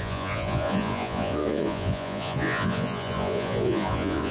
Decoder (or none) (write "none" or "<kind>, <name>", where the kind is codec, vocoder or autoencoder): vocoder, Vocos